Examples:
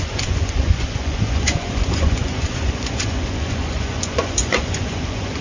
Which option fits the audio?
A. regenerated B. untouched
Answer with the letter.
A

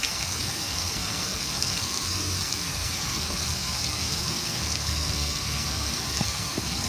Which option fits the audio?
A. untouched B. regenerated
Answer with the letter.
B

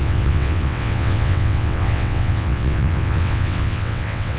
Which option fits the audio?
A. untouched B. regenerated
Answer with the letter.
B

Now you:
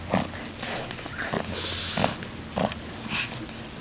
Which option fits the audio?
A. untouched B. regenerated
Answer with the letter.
A